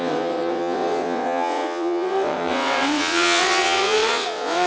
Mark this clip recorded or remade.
remade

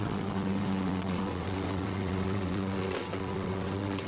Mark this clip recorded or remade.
remade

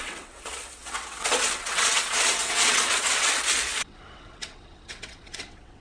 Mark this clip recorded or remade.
remade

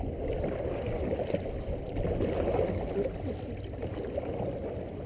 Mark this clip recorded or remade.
recorded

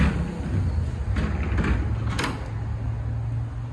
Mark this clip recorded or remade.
recorded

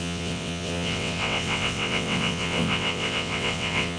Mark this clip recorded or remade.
remade